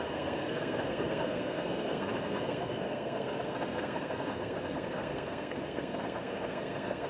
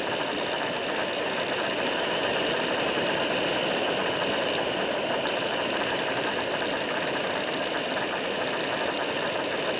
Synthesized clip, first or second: first